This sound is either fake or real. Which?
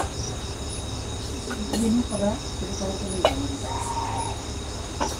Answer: real